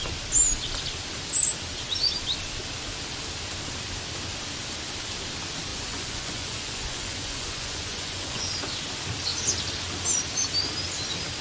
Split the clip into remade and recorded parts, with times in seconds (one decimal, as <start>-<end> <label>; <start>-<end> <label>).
0.0-5.7 recorded; 5.7-8.5 remade; 8.5-11.4 recorded